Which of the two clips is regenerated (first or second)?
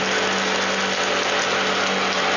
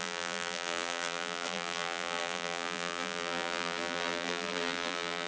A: second